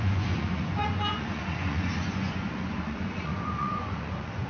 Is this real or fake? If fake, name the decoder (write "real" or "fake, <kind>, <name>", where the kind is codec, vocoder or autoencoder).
fake, vocoder, Vocos